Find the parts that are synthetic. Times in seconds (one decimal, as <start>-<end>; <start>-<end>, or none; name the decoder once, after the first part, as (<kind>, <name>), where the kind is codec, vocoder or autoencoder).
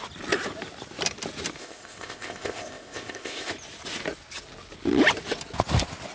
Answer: 1.6-3.5 (codec, ZipCodec)